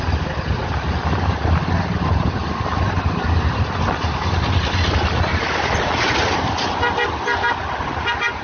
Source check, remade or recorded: recorded